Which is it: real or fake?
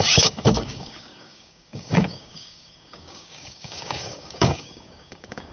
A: fake